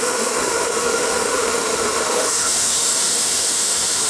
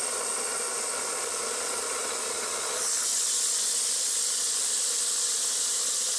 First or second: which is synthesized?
first